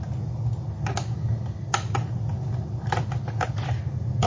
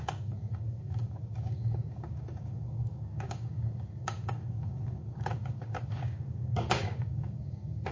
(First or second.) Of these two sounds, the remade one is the second